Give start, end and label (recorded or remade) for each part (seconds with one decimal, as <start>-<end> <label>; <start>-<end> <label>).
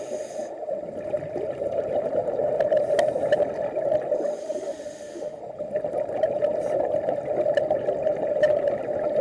0.0-4.4 recorded; 4.4-5.4 remade; 5.4-9.2 recorded